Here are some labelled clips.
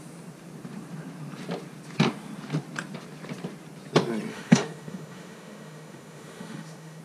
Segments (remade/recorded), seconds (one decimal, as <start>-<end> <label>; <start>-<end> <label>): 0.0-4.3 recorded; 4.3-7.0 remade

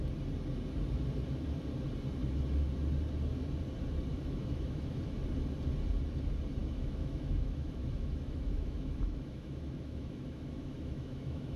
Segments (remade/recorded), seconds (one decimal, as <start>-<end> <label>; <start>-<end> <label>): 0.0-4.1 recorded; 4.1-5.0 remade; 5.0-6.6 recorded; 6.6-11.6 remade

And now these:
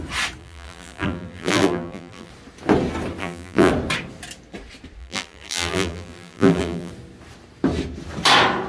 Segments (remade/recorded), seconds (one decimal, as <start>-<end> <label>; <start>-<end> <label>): 0.0-0.4 recorded; 0.4-2.3 remade; 2.3-3.2 recorded; 3.2-3.7 remade; 3.7-5.0 recorded; 5.0-6.9 remade; 6.9-8.7 recorded

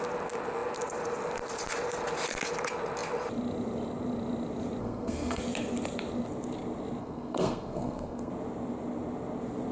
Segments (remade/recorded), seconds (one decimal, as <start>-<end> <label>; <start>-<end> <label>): 0.0-4.8 recorded; 4.8-5.4 remade; 5.4-7.0 recorded; 7.0-8.3 remade; 8.3-9.7 recorded